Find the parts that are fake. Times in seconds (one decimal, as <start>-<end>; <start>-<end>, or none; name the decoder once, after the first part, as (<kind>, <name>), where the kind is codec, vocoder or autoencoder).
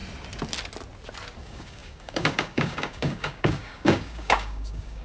1.4-5.0 (codec, DAC)